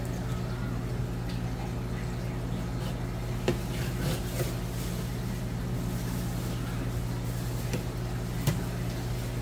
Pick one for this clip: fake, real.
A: real